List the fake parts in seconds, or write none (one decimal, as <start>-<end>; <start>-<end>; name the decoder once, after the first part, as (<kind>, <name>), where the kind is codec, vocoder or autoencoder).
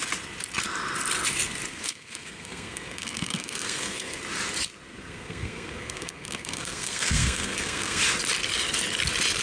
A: 1.7-4.2 (codec, SNAC); 4.9-8.0